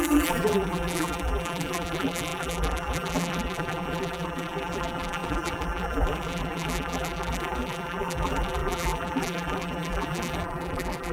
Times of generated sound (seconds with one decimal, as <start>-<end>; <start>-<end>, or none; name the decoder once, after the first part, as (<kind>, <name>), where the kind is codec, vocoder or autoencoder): 0.0-11.1 (vocoder, BigVGAN v2)